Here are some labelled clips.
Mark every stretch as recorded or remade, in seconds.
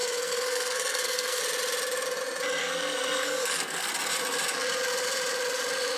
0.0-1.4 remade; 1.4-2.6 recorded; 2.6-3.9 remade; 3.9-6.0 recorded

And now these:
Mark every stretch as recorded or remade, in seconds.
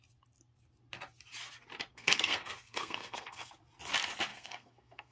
0.0-1.9 recorded; 1.9-3.5 remade; 3.5-4.3 recorded; 4.3-5.1 remade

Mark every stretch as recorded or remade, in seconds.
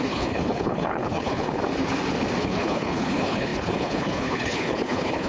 0.0-1.6 remade; 1.6-2.4 recorded; 2.4-5.3 remade